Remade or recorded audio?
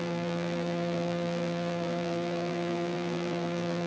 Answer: remade